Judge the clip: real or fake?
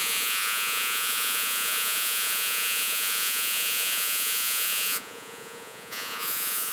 fake